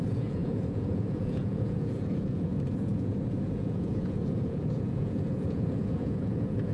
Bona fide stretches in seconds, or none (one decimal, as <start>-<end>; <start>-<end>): none